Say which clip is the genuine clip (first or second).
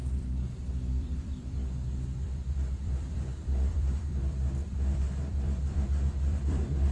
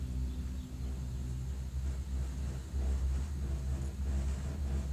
second